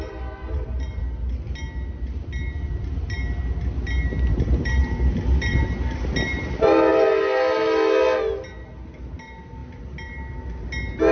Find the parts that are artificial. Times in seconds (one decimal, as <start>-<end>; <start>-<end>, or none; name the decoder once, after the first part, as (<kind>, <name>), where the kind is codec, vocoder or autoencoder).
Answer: 0.4-1.0 (vocoder, BigVGAN v2); 4.3-5.6